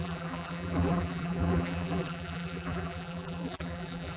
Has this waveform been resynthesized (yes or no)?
yes